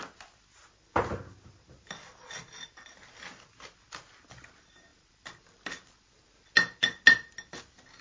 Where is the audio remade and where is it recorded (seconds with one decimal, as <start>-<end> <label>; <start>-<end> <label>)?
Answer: 0.0-8.0 recorded